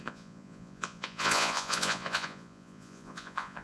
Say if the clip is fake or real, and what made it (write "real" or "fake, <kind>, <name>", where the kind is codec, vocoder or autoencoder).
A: fake, vocoder, Vocos